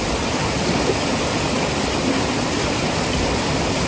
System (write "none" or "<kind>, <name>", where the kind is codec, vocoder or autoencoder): none